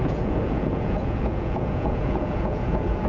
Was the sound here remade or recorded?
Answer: remade